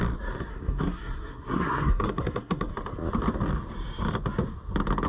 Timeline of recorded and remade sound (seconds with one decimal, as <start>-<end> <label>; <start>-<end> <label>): 0.0-0.5 recorded; 0.5-2.7 remade; 2.7-5.1 recorded